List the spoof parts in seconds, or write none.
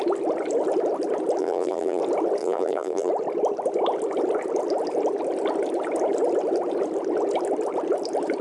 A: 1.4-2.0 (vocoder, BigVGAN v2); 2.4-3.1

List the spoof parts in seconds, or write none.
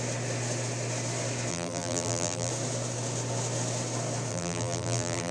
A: 1.5-2.5 (vocoder, BigVGAN v2); 4.3-5.3